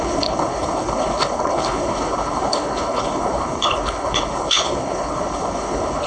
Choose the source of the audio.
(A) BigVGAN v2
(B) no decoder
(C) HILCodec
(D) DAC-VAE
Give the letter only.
C